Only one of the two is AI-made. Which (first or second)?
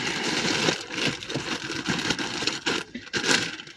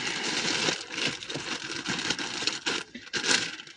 first